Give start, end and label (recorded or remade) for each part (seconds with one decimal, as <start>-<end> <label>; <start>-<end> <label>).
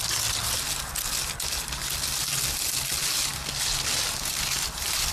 0.0-5.1 recorded